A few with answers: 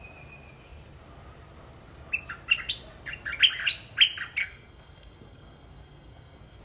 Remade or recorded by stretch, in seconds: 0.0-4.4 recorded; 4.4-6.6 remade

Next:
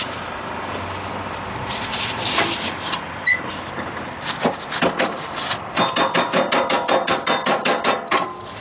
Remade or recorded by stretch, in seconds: 0.0-8.6 recorded

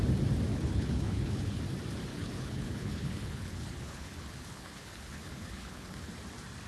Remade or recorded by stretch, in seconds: 0.0-0.5 recorded; 0.5-1.6 remade; 1.6-2.1 recorded; 2.1-6.1 remade; 6.1-6.7 recorded